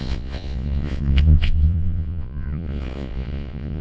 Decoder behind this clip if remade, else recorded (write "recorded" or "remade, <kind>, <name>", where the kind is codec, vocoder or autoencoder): remade, vocoder, Vocos